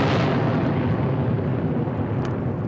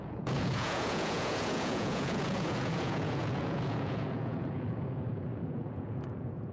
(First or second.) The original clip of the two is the first